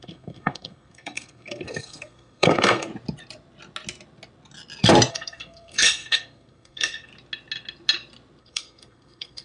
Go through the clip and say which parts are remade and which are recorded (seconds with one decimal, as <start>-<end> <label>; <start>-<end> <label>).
0.0-2.9 remade; 2.9-5.1 recorded; 5.1-7.1 remade; 7.1-8.4 recorded; 8.4-9.4 remade